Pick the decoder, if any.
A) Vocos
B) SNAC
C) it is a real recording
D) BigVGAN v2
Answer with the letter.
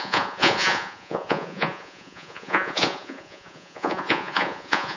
A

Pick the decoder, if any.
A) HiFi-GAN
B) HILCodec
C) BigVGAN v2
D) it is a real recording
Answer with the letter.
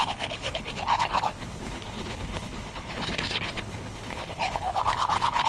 B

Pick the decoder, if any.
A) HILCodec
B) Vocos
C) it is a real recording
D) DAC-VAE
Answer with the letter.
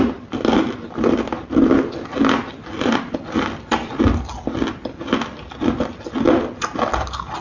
C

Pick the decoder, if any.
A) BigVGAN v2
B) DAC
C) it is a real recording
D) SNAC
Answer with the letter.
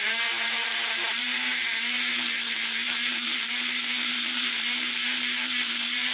A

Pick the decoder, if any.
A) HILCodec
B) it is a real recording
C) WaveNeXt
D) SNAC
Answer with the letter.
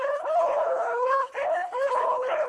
A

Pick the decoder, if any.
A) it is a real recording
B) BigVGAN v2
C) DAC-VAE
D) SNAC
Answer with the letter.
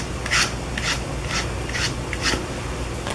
A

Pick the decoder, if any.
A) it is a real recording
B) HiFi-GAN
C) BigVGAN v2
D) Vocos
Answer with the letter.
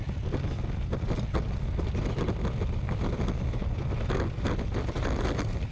A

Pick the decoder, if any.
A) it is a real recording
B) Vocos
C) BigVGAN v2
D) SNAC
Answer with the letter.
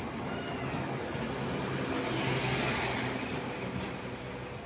A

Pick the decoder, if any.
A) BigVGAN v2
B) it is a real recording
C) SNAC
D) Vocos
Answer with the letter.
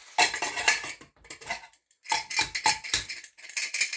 B